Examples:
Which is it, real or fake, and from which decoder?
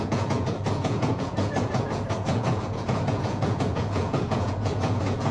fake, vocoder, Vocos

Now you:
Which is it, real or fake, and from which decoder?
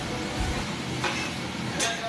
real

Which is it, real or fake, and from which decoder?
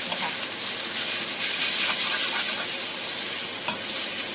real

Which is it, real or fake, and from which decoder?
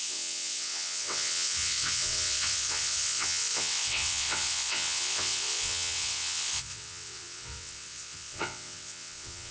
fake, vocoder, WaveNeXt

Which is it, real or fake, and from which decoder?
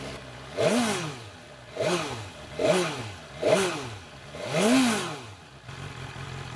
real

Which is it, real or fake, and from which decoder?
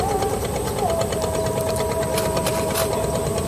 real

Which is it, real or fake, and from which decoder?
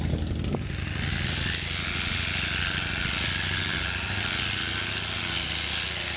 real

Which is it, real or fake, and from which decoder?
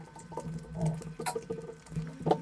real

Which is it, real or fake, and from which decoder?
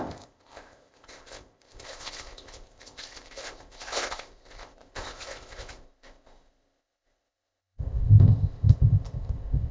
fake, codec, ZipCodec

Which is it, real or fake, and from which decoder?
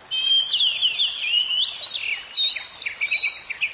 real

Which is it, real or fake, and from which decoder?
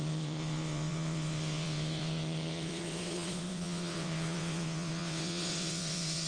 fake, vocoder, WaveNeXt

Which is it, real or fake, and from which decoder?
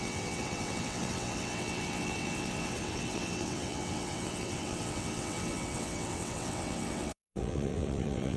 fake, vocoder, WaveNeXt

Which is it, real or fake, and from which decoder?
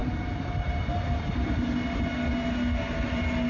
real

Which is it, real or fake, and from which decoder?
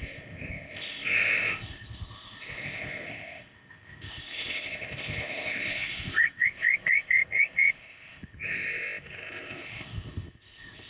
fake, codec, ZipCodec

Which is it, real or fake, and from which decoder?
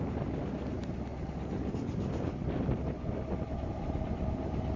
real